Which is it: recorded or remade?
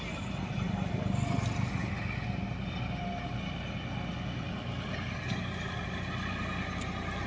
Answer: recorded